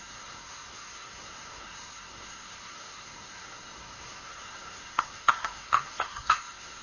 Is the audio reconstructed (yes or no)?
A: yes